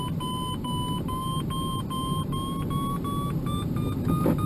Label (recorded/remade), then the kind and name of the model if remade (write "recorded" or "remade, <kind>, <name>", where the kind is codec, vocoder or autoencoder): recorded